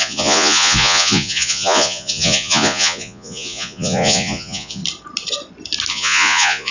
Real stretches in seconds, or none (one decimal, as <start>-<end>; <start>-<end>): 4.8-5.9